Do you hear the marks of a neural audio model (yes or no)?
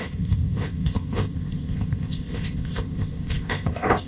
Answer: yes